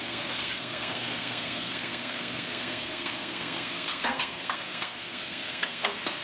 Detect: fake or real fake